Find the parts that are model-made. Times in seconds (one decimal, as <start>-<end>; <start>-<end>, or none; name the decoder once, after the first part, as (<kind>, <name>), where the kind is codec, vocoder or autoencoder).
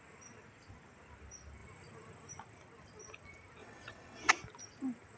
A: 3.6-4.3 (vocoder, WaveNeXt)